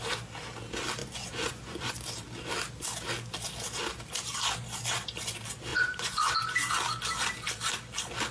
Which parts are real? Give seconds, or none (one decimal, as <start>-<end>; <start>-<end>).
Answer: 0.0-1.0; 1.9-5.7; 6.3-8.3

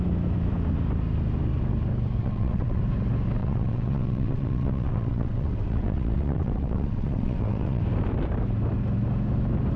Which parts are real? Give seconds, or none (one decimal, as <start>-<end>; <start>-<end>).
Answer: 0.0-2.2; 2.8-3.4; 7.8-9.8

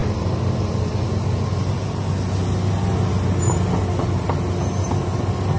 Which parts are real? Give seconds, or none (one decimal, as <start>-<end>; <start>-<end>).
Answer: 0.0-5.6

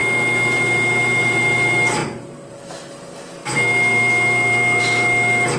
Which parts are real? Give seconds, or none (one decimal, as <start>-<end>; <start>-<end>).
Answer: 0.0-1.2; 2.0-2.5; 3.4-4.8